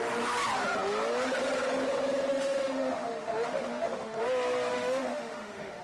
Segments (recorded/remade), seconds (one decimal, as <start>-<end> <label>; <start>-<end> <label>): 0.0-2.3 recorded; 2.3-4.2 remade; 4.2-4.7 recorded; 4.7-5.8 remade